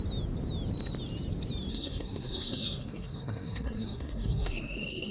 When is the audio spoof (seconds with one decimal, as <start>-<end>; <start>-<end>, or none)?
1.7-5.1